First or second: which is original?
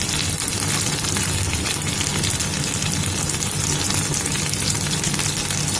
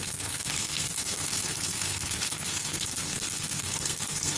first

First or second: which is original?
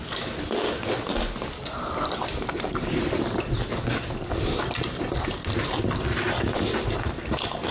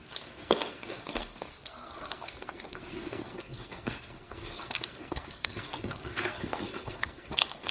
first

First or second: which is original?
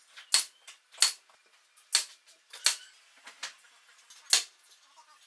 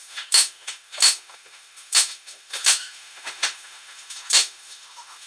first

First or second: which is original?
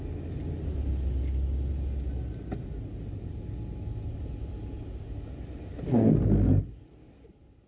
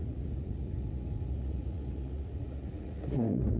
first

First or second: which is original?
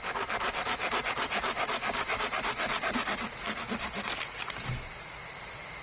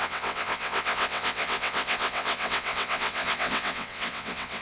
first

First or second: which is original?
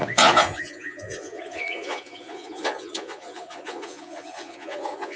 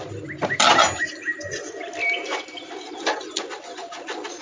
second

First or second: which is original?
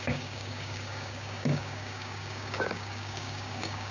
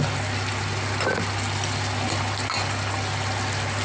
second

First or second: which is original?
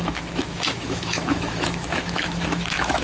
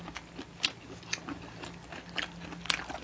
second